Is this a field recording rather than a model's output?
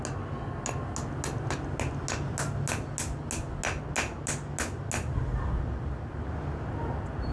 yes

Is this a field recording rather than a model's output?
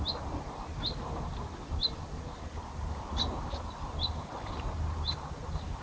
yes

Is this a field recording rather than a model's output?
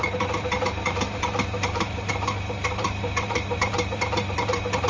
no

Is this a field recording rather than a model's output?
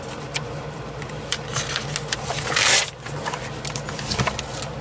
yes